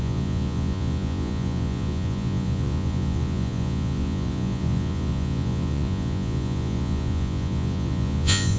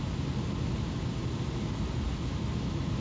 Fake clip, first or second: first